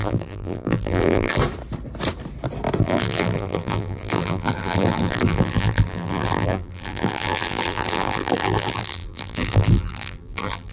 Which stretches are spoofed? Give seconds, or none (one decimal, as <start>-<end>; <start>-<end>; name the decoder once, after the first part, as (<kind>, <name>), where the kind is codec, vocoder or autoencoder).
0.0-1.4 (vocoder, BigVGAN v2); 2.8-10.7